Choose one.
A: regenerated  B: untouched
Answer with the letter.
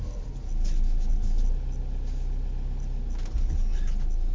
B